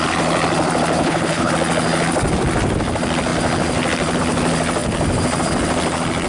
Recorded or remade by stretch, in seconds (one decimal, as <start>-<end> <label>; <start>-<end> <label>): 0.0-1.0 recorded; 1.0-1.5 remade; 1.5-6.3 recorded